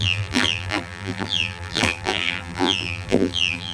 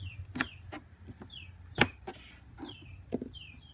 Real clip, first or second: second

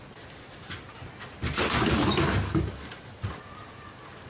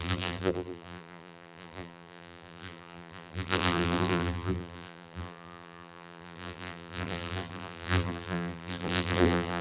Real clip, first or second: first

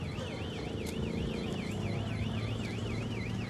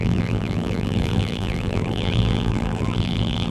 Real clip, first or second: first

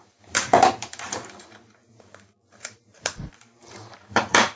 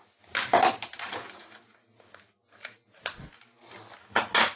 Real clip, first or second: second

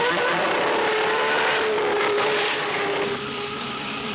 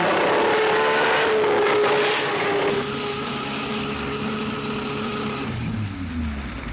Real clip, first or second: second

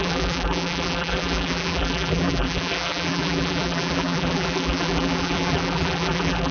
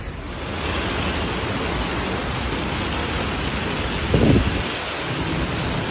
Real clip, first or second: second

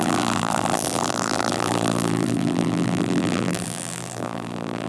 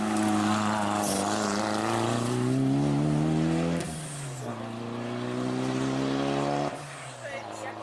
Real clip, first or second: second